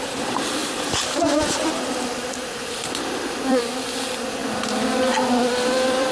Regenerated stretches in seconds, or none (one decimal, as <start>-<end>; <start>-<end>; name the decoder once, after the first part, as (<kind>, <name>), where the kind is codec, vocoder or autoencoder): 0.0-4.4 (vocoder, BigVGAN v2); 5.0-6.1